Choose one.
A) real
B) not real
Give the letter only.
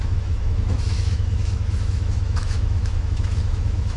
B